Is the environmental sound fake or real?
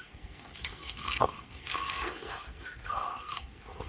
fake